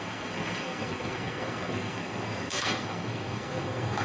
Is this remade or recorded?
remade